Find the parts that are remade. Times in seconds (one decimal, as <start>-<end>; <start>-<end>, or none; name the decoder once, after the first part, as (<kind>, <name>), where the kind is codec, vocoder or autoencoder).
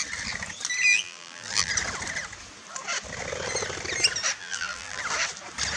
0.9-1.7 (vocoder, BigVGAN v2); 4.4-5.0